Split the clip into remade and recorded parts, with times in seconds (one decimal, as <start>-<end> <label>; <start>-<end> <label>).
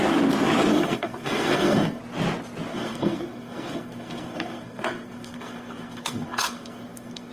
0.0-0.7 recorded; 0.7-2.0 remade; 2.0-2.7 recorded; 2.7-7.3 remade